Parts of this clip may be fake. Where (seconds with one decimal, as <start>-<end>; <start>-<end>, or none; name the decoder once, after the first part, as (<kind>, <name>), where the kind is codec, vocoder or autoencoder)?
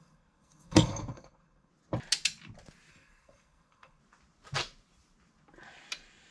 0.0-1.7 (codec, SNAC); 2.9-4.0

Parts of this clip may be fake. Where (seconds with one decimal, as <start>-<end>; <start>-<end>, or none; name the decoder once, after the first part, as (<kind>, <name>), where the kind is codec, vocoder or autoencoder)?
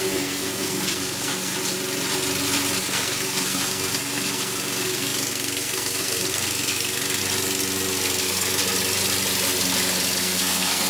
0.0-1.5 (codec, SNAC); 2.8-7.2; 8.2-8.6; 10.2-10.9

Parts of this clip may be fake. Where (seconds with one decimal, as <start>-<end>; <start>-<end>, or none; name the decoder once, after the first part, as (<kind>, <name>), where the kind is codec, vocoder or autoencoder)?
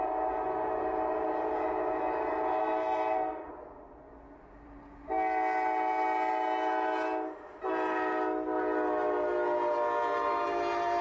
2.6-3.5 (codec, SNAC)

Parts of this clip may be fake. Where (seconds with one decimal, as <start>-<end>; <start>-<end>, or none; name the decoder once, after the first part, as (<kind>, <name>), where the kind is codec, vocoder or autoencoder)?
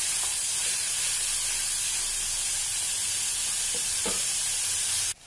none